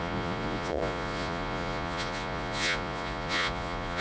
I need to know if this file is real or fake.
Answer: fake